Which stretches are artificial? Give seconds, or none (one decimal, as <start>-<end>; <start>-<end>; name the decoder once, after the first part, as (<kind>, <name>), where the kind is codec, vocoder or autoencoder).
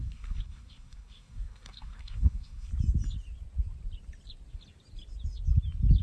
0.0-2.7 (codec, SNAC)